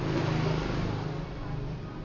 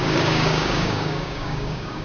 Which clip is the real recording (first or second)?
first